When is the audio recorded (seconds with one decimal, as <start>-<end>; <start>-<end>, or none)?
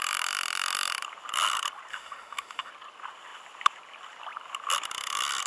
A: 0.0-1.9; 2.7-5.5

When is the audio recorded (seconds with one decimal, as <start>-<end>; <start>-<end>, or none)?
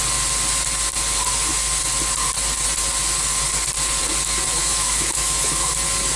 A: 0.0-4.6; 5.7-6.2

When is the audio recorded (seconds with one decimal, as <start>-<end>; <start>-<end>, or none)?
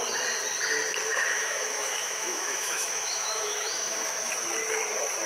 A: 0.0-1.1; 4.3-5.3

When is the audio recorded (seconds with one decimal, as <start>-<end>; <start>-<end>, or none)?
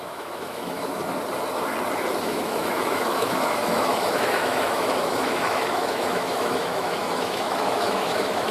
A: 1.0-2.2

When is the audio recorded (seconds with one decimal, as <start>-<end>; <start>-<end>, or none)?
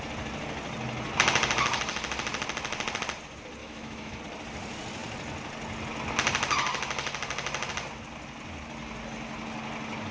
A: 0.0-3.6; 4.2-10.1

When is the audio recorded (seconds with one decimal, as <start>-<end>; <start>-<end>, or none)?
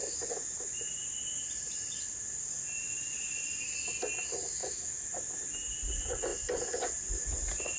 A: 0.0-4.6; 5.1-7.8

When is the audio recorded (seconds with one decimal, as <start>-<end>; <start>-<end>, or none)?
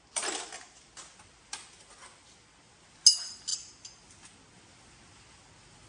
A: 0.0-5.9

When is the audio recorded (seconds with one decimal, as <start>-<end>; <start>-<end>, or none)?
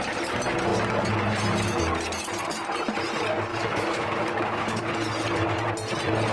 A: 0.0-3.5; 4.8-6.3